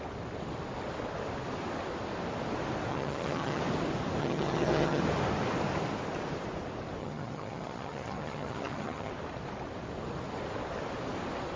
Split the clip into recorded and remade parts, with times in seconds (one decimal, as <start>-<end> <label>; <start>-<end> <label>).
0.0-2.9 recorded; 2.9-3.6 remade; 3.6-4.2 recorded; 4.2-5.0 remade; 5.0-7.0 recorded; 7.0-9.1 remade; 9.1-11.6 recorded